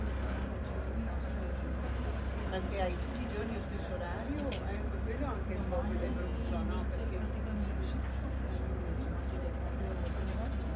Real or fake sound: real